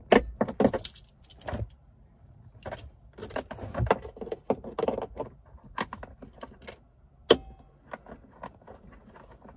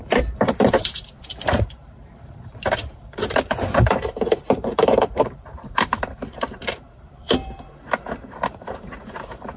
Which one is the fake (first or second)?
second